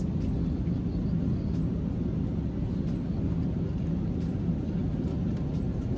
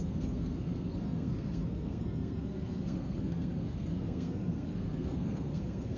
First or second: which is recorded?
first